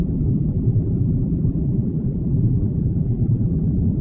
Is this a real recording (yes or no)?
no